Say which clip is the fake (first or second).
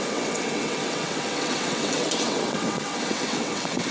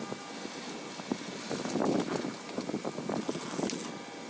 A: first